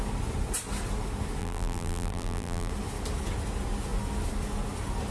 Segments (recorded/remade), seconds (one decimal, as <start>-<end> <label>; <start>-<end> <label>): 0.0-1.4 recorded; 1.4-2.7 remade; 2.7-5.1 recorded